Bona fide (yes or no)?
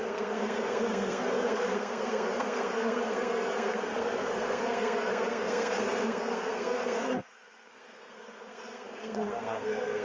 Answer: no